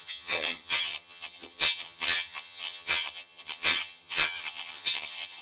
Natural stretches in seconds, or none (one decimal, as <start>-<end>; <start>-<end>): none